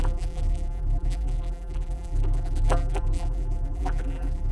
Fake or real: fake